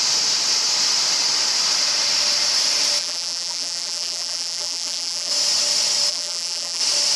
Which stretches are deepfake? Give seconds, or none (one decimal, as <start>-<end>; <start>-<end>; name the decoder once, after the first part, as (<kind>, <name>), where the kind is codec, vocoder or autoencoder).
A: 3.0-5.3 (vocoder, BigVGAN v2); 6.1-6.8